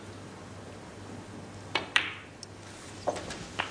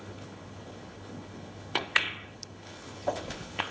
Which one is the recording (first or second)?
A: first